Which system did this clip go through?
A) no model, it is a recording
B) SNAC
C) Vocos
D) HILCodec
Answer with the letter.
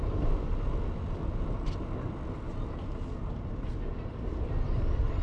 A